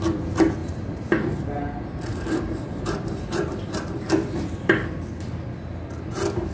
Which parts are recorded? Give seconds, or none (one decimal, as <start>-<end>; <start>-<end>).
0.0-0.6; 1.5-2.1; 4.4-6.5